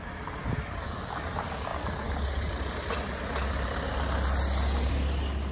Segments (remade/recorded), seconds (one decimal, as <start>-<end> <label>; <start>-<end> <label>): 0.0-5.5 recorded